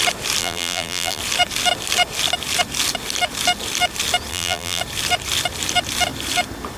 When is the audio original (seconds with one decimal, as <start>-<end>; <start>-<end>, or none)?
0.0-0.4; 1.2-4.3; 4.8-6.8